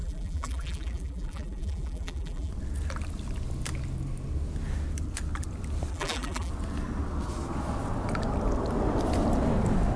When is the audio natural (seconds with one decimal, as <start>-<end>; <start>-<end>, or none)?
2.5-5.9; 6.5-10.0